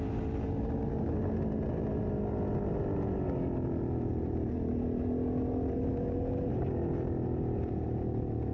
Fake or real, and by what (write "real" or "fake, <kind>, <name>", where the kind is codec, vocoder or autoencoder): real